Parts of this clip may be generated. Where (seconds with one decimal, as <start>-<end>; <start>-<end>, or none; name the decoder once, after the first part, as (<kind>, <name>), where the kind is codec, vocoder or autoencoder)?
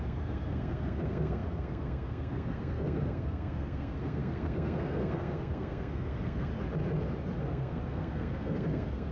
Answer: 0.0-6.5 (codec, SNAC); 7.4-9.1